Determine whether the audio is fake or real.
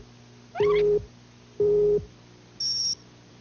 real